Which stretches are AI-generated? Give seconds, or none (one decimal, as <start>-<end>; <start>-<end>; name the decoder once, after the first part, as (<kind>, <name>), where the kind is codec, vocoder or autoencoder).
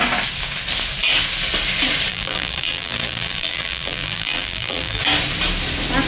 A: 2.1-5.0 (vocoder, BigVGAN v2)